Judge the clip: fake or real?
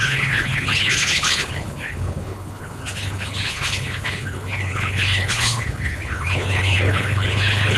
fake